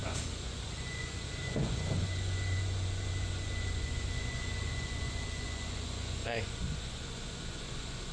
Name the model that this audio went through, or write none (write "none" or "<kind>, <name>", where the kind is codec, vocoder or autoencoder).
vocoder, Vocos